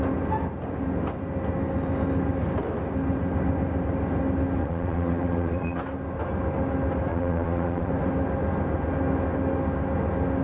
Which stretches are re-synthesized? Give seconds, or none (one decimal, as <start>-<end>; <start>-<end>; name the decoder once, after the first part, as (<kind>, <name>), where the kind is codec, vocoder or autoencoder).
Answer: 4.6-5.8 (vocoder, Vocos); 7.1-7.9